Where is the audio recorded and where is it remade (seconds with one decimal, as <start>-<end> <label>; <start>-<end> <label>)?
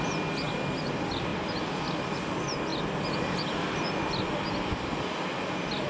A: 0.0-5.9 recorded